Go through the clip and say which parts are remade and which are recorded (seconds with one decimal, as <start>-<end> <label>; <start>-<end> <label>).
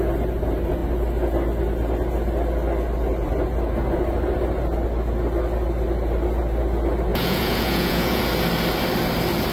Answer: 0.0-7.1 recorded; 7.1-8.2 remade; 8.2-9.5 recorded